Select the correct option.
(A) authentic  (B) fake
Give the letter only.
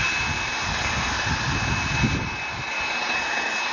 A